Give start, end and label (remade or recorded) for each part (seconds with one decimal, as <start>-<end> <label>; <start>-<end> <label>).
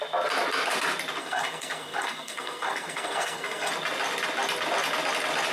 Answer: 0.0-1.2 recorded; 1.2-3.7 remade; 3.7-5.5 recorded